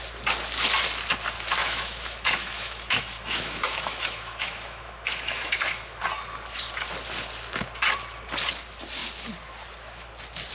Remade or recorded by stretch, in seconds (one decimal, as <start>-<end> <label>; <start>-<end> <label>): 0.0-1.6 recorded; 1.6-6.0 remade; 6.0-10.5 recorded